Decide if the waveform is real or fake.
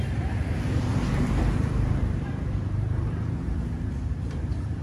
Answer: fake